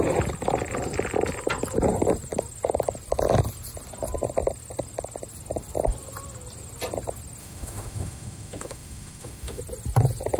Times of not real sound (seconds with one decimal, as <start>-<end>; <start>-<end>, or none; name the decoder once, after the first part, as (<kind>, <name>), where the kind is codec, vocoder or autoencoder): 7.4-9.6 (autoencoder, DAC-VAE)